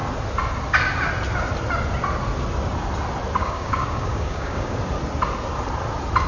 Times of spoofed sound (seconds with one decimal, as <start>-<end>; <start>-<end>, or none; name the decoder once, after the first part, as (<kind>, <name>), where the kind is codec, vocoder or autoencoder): 3.4-4.8 (codec, DAC)